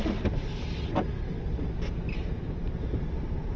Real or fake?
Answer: real